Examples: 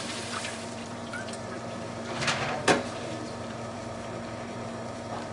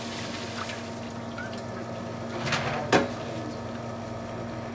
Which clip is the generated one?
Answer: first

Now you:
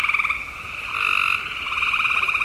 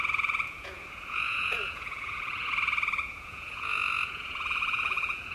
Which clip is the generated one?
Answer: second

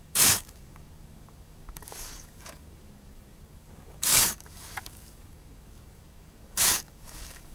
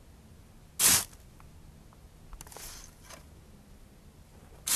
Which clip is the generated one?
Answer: first